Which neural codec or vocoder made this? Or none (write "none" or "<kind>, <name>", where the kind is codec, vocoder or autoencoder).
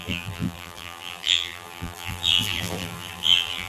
vocoder, BigVGAN v2